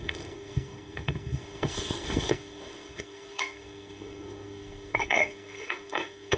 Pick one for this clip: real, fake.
fake